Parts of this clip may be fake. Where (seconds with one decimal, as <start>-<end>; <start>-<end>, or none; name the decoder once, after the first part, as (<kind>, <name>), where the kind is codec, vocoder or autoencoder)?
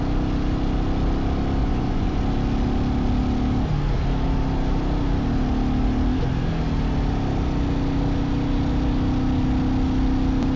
1.6-2.2 (vocoder, Vocos)